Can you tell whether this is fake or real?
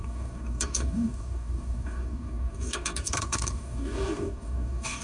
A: fake